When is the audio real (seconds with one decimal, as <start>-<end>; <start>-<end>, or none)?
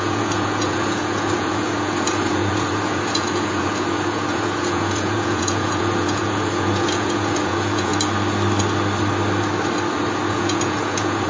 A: 7.9-10.3